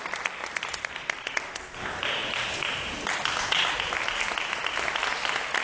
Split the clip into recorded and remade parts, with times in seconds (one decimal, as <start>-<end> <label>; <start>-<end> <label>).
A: 0.0-5.6 recorded